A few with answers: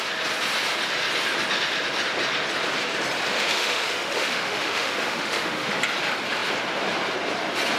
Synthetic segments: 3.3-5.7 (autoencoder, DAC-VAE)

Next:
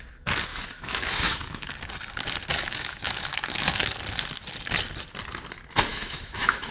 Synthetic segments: 0.5-1.8 (autoencoder, DAC-VAE); 2.5-3.9; 5.9-6.7

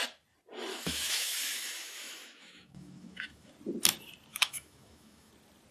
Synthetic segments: 0.7-3.5 (autoencoder, DAC-VAE); 4.3-5.3

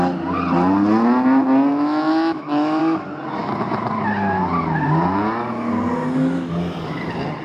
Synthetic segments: 1.7-2.8 (autoencoder, DAC-VAE)

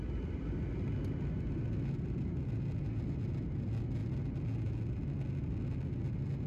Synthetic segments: none

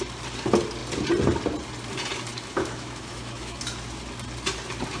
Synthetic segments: 2.3-3.6 (autoencoder, DAC-VAE)

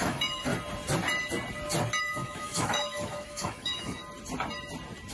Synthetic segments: 0.0-0.5 (autoencoder, DAC-VAE); 2.0-4.0